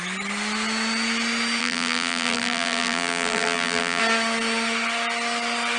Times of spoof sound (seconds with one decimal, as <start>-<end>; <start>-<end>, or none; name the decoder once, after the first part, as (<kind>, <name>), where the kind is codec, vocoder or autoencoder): 1.6-4.0 (vocoder, BigVGAN v2)